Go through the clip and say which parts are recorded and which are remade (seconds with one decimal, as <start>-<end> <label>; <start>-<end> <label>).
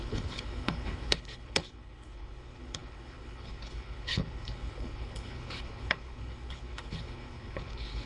0.0-8.1 remade